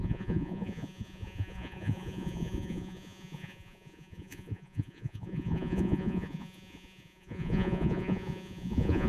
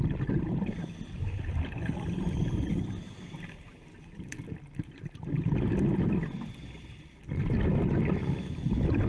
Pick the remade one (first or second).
first